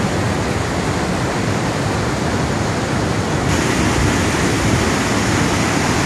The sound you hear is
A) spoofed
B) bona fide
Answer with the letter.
B